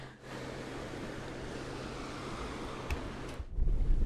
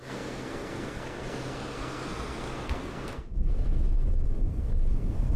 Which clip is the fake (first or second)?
second